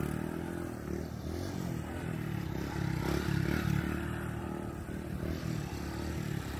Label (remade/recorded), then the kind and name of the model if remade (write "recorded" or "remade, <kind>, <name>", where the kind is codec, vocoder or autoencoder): recorded